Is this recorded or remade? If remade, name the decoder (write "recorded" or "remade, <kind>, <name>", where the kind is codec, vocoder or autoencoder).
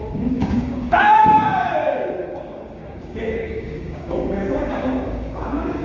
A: remade, codec, DAC